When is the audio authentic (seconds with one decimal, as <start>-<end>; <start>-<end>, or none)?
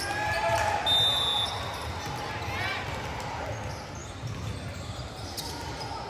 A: 0.0-4.0; 5.4-6.1